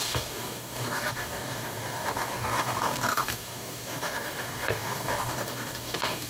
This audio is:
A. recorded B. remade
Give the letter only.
B